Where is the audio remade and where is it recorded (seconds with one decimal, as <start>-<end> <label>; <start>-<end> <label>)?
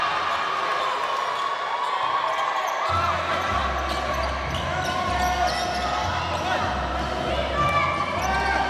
0.0-8.7 recorded